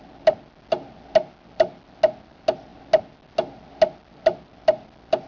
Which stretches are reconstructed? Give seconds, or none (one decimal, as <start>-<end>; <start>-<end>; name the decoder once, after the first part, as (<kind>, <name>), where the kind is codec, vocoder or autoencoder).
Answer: none